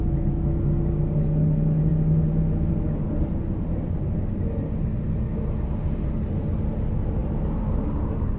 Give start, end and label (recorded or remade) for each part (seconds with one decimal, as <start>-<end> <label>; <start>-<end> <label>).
0.0-7.2 recorded; 7.2-8.4 remade